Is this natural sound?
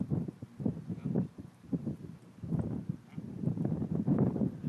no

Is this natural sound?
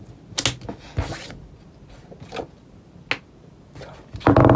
yes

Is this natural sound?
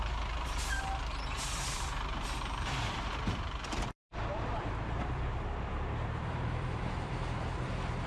no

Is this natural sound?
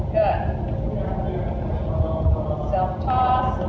yes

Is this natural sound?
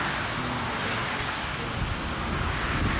yes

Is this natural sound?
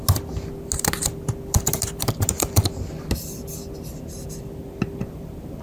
yes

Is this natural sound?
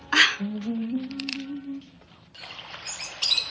no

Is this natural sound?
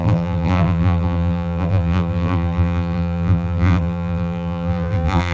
no